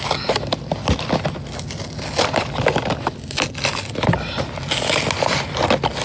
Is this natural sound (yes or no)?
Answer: yes